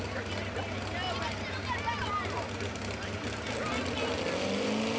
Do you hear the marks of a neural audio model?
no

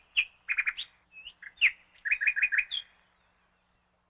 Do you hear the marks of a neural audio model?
no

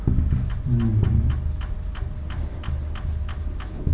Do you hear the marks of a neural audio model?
no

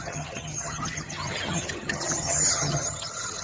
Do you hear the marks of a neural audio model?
yes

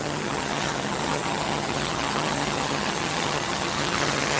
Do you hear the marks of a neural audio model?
yes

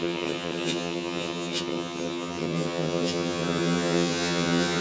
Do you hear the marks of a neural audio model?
yes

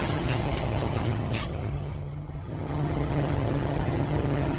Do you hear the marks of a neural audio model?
yes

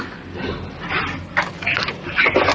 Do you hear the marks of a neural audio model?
no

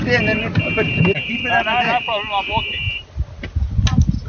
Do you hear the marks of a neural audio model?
no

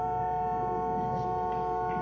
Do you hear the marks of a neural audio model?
no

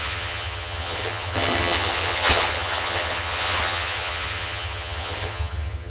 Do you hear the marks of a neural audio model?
yes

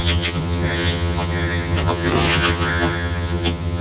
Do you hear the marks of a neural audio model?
yes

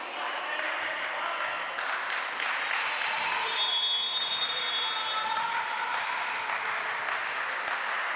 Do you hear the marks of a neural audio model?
no